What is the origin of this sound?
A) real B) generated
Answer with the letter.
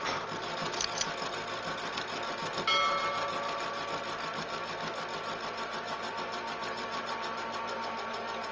A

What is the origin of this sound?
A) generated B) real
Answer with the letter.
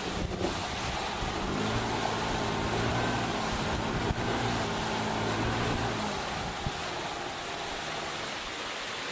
B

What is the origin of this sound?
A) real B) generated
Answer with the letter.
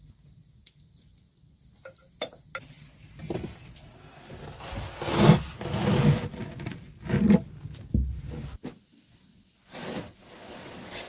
A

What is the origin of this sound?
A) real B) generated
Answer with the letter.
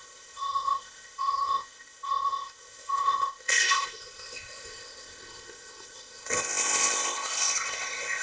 B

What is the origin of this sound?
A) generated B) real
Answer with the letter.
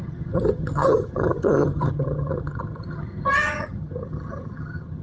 A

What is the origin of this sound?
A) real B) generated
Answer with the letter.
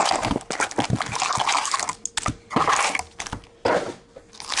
A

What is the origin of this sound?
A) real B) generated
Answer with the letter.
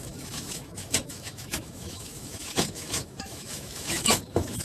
B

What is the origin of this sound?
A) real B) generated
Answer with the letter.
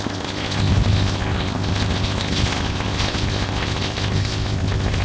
B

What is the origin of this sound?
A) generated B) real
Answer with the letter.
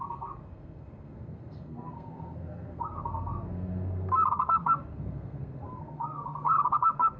A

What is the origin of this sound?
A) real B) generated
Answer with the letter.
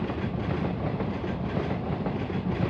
A